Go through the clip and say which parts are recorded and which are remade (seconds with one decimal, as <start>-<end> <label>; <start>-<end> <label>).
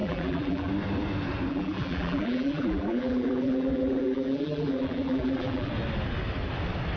0.0-0.7 remade; 0.7-1.5 recorded; 1.5-5.7 remade; 5.7-7.0 recorded